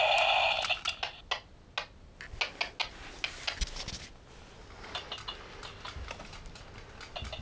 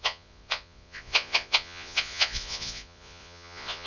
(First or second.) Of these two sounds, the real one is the first